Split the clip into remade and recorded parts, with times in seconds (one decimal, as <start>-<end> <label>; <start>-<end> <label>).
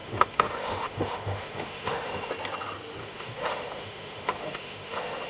0.0-2.3 remade; 2.3-3.0 recorded; 3.0-5.3 remade